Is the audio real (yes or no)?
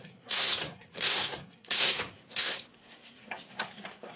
no